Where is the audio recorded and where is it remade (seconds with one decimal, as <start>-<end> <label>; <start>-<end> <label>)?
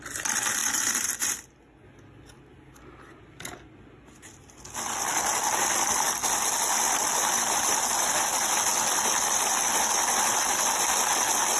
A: 0.0-11.6 recorded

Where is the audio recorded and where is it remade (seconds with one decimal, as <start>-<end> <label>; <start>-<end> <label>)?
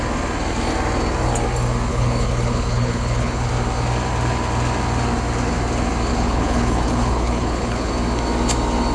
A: 0.0-1.9 recorded; 1.9-3.5 remade; 3.5-6.1 recorded; 6.1-7.9 remade; 7.9-8.9 recorded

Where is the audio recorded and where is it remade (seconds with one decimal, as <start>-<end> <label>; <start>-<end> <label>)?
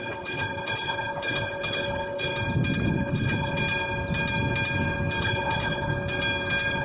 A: 0.0-2.3 remade; 2.3-2.9 recorded; 2.9-3.6 remade; 3.6-5.2 recorded; 5.2-5.9 remade; 5.9-6.8 recorded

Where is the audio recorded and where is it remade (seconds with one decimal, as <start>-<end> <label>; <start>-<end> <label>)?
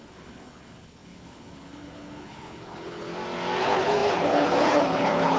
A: 0.0-3.1 remade; 3.1-3.6 recorded; 3.6-5.4 remade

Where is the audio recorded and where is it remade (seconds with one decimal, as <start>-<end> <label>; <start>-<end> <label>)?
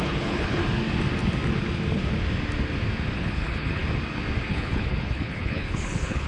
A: 0.0-0.6 remade; 0.6-3.2 recorded; 3.2-3.8 remade; 3.8-4.5 recorded; 4.5-6.3 remade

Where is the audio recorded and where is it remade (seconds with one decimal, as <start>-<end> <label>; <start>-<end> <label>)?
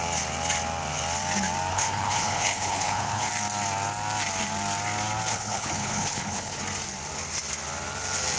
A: 0.0-1.7 recorded; 1.7-3.3 remade; 3.3-5.3 recorded; 5.3-6.6 remade; 6.6-8.4 recorded